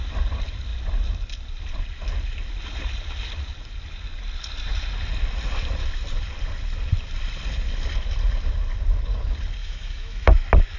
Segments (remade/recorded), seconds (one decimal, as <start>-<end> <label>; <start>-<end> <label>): 0.0-9.6 recorded; 9.6-10.3 remade; 10.3-10.8 recorded